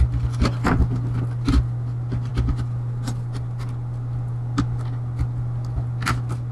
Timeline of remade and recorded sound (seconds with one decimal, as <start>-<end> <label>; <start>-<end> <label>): 0.0-6.5 recorded